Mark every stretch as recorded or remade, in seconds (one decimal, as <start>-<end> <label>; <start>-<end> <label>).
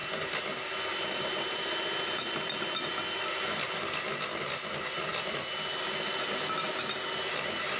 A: 0.0-7.8 recorded